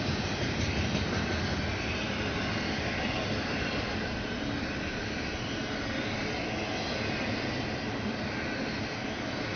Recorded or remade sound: recorded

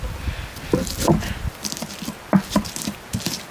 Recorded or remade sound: recorded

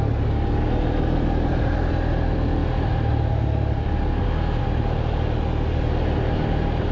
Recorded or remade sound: recorded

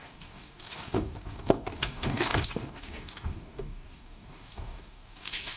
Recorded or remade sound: remade